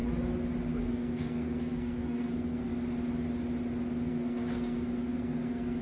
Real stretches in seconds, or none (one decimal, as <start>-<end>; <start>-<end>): 0.0-0.8; 2.7-4.1